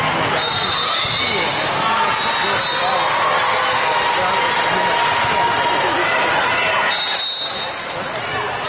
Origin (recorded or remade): recorded